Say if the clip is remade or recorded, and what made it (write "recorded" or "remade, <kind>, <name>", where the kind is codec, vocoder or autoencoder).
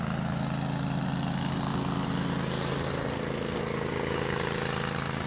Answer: recorded